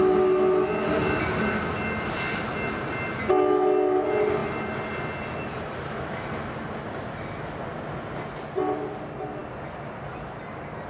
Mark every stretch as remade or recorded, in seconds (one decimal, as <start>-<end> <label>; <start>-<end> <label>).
0.0-10.9 recorded